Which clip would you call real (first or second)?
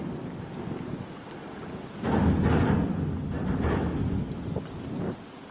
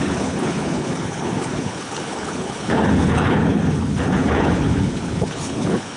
first